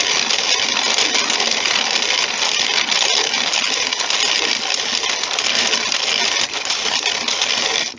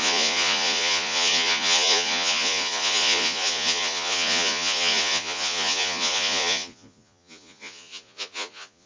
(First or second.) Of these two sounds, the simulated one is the second